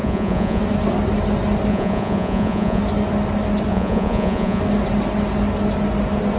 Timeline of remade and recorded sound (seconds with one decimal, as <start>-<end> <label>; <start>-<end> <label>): 0.0-0.6 remade; 0.6-1.7 recorded; 1.7-2.8 remade; 2.8-3.7 recorded; 3.7-4.6 remade; 4.6-6.4 recorded